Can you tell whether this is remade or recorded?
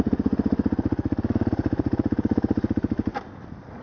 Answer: recorded